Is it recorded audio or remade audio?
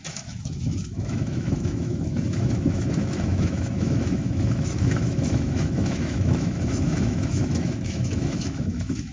remade